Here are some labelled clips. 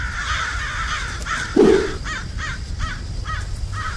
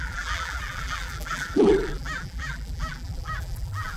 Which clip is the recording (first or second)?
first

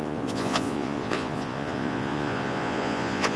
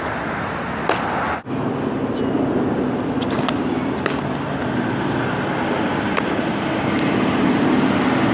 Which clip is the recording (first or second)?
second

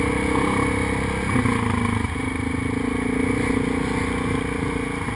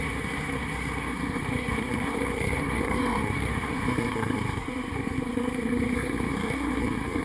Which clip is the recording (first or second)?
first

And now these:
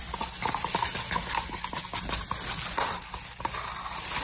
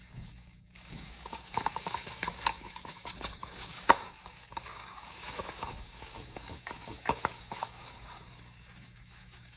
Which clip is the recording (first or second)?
first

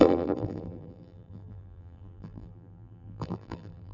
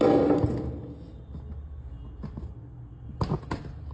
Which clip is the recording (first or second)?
second